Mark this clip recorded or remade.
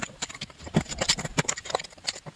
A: remade